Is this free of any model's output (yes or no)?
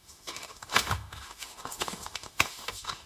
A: no